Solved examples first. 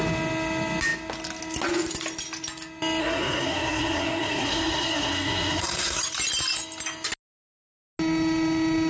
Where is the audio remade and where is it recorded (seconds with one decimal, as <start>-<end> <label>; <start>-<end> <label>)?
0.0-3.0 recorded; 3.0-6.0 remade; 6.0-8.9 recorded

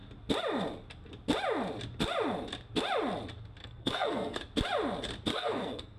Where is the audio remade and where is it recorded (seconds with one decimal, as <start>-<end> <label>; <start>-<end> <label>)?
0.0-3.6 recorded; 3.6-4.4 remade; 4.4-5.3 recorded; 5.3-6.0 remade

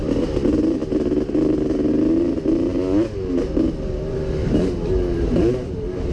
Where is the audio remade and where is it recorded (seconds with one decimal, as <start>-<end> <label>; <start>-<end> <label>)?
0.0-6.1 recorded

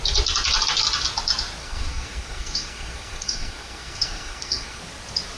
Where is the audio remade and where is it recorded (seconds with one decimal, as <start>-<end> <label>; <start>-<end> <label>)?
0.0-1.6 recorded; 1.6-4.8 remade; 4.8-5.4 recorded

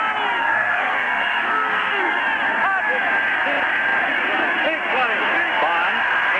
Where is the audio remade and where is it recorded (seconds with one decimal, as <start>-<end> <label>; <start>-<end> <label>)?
0.0-0.4 recorded; 0.4-2.2 remade; 2.2-6.4 recorded